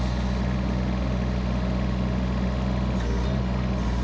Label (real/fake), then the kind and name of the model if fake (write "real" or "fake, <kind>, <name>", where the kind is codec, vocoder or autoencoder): real